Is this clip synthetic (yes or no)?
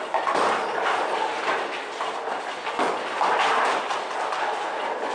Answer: no